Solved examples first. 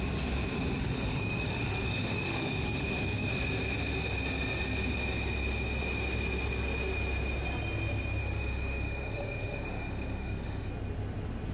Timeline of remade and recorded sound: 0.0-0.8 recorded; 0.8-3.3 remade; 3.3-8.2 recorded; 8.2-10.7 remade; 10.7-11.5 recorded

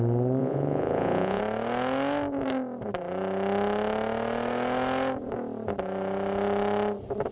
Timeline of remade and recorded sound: 0.0-0.4 recorded; 0.4-1.4 remade; 1.4-7.3 recorded